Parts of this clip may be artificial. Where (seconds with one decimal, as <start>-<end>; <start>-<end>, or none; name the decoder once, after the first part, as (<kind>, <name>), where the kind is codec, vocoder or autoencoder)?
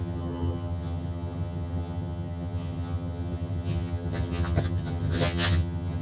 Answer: 0.0-6.0 (vocoder, HiFi-GAN)